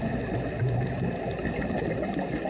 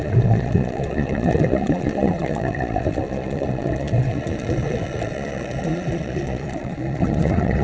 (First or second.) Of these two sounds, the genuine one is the first